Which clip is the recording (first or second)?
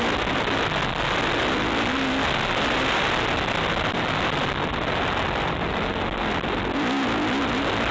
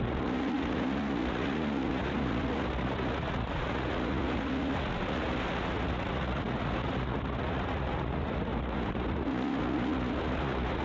first